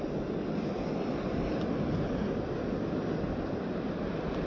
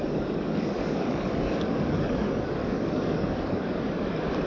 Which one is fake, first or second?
second